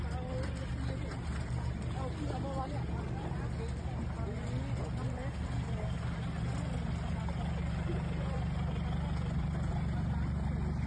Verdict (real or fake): real